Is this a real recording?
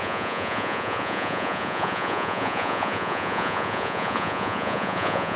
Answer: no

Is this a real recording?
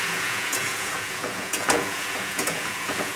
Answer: no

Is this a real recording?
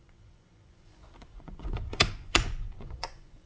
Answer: no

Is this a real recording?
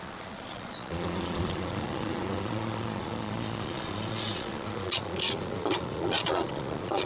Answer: no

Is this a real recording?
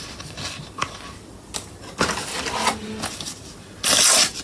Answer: yes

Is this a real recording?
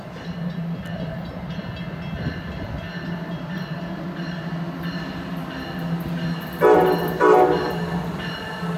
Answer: yes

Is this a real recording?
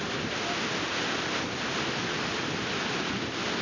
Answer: yes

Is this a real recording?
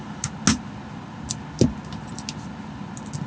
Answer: yes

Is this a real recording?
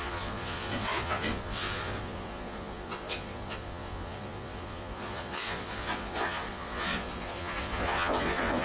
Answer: no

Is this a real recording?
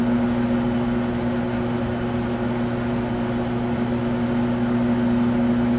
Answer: yes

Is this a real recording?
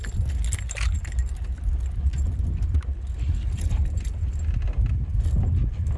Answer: yes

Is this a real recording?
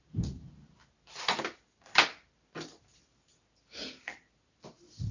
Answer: yes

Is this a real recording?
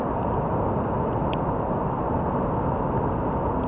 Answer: yes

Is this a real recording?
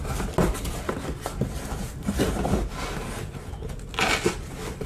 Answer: yes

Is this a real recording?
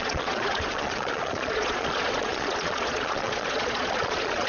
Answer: no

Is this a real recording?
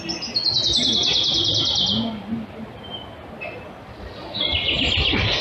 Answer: yes